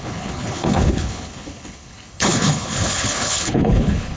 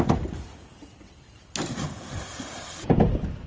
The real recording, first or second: second